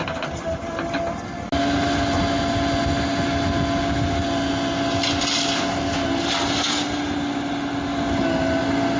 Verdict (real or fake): real